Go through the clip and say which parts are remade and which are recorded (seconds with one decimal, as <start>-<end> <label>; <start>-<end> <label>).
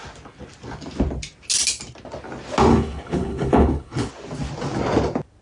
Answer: 0.0-2.7 recorded; 2.7-4.1 remade; 4.1-5.4 recorded